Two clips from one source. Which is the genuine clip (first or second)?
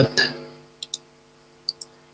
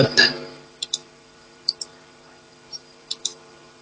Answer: first